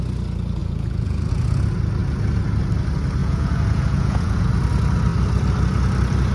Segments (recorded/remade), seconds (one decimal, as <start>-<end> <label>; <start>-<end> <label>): 0.0-0.6 recorded; 0.6-1.3 remade; 1.3-3.2 recorded; 3.2-4.5 remade; 4.5-6.3 recorded